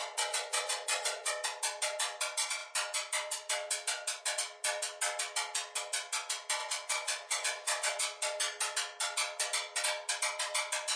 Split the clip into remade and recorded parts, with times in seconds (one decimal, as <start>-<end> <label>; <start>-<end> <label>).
0.0-1.3 remade; 1.3-6.6 recorded; 6.6-8.0 remade; 8.0-11.0 recorded